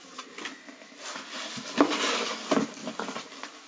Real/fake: real